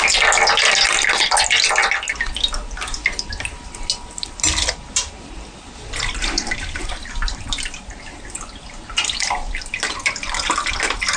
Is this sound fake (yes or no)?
no